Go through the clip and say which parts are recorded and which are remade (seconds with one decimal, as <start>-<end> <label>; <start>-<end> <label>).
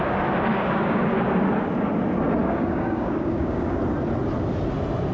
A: 0.0-0.5 recorded; 0.5-1.0 remade; 1.0-2.4 recorded; 2.4-3.8 remade; 3.8-5.1 recorded